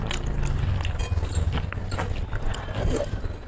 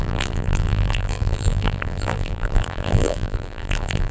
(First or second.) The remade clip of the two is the second